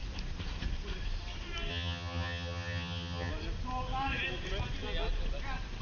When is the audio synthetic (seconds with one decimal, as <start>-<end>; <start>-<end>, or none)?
1.7-3.3